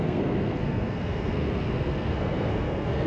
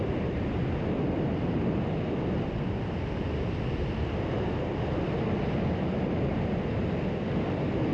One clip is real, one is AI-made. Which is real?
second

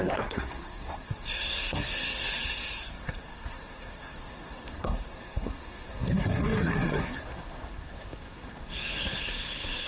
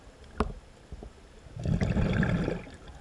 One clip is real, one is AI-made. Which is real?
second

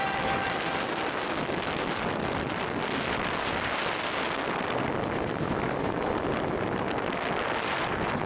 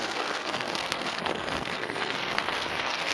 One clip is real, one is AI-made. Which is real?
first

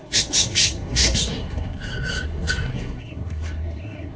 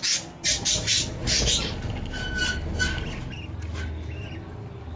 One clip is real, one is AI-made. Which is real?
second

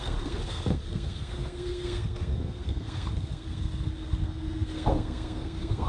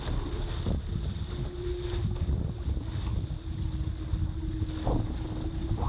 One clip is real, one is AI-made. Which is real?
second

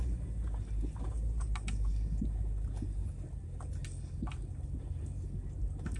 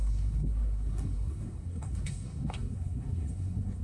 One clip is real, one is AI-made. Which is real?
first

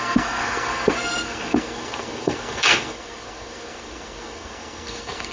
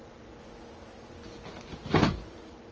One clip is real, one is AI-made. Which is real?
second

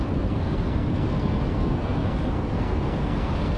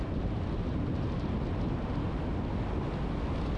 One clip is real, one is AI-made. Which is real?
second